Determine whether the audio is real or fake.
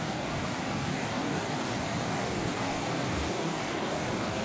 fake